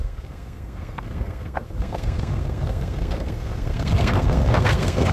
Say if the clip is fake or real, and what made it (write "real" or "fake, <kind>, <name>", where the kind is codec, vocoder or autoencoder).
fake, codec, SNAC